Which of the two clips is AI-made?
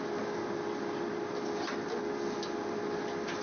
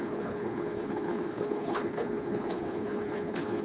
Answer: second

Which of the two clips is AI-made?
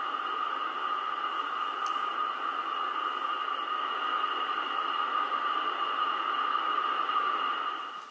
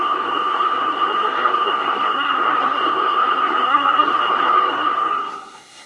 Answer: second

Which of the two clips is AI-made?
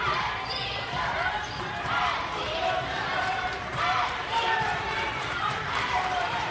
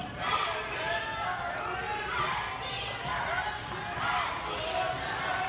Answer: first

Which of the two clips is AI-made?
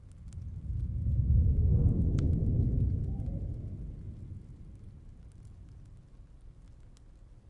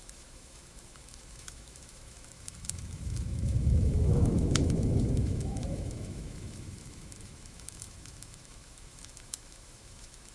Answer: second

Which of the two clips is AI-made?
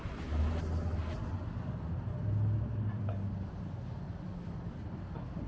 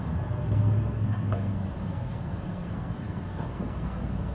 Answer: second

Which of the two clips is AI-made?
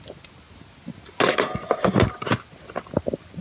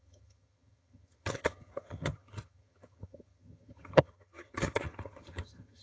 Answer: second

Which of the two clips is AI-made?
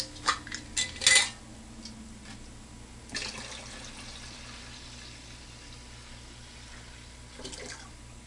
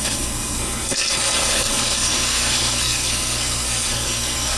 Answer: second